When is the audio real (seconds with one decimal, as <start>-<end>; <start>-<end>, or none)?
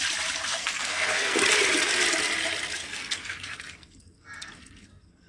0.0-0.5; 1.4-2.8